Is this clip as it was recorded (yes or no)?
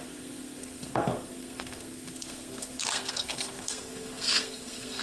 no